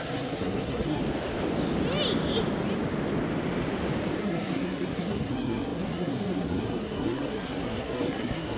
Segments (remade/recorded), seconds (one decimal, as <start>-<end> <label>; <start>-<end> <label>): 0.0-1.0 remade; 1.0-4.2 recorded; 4.2-8.6 remade